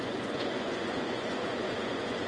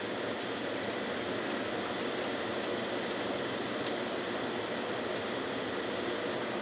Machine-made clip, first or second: first